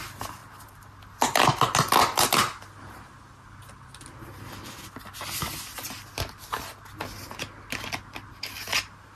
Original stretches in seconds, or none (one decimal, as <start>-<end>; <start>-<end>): 0.0-9.2